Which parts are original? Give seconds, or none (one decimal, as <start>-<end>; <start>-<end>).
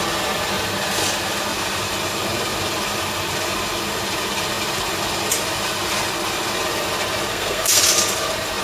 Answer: 0.0-7.3; 7.8-8.6